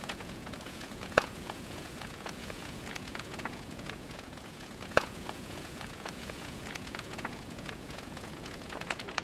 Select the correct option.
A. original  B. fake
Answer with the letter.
B